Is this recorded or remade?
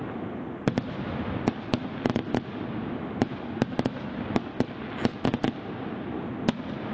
recorded